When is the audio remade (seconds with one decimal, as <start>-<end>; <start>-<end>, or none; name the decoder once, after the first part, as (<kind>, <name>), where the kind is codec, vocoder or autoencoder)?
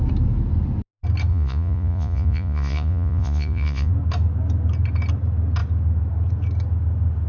1.3-3.9 (vocoder, Vocos)